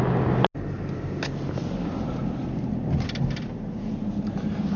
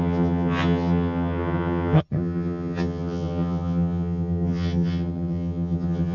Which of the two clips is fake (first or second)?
second